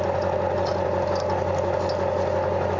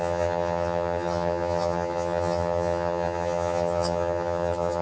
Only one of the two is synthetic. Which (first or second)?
second